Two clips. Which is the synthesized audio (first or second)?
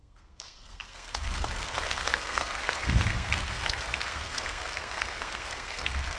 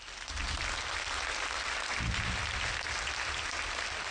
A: first